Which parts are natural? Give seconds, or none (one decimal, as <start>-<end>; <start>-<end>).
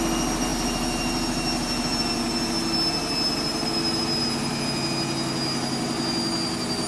0.0-6.9